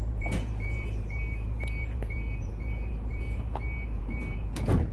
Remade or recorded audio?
remade